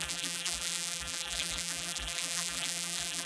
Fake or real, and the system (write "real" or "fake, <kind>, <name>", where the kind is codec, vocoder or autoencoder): fake, vocoder, BigVGAN v2